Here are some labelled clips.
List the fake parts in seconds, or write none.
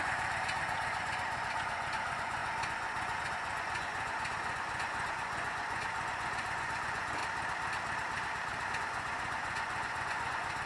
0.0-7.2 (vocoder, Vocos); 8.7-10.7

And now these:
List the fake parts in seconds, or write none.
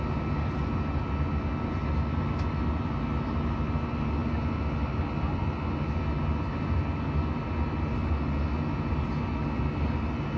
none